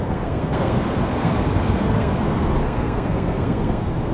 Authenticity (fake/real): fake